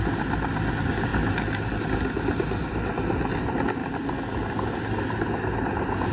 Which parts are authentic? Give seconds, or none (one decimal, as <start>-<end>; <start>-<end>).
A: 0.0-6.1